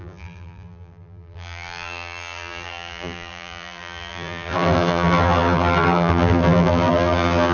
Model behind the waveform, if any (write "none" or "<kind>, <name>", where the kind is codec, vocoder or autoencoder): vocoder, BigVGAN v2